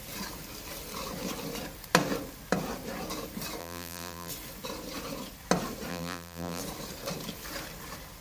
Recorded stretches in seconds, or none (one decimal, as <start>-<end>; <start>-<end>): 0.0-3.6; 4.3-5.9; 6.6-8.2